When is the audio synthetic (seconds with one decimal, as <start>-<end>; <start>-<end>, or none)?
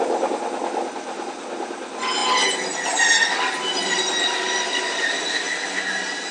none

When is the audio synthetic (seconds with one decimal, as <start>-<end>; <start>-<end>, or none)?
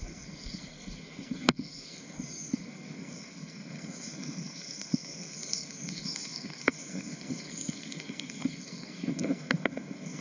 0.0-10.2